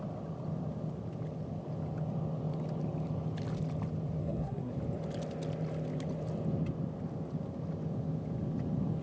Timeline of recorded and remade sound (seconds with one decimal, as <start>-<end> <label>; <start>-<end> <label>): 0.0-4.2 recorded; 4.2-4.7 remade; 4.7-9.0 recorded